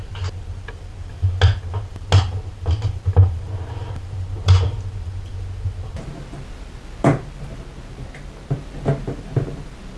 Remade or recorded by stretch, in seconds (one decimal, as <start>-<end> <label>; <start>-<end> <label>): 0.0-10.0 recorded